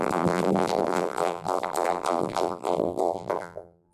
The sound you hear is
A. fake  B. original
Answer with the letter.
A